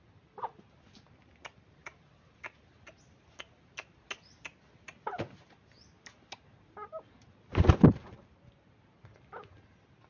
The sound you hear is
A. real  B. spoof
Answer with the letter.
A